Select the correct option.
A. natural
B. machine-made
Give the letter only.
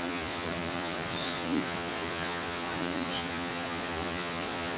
B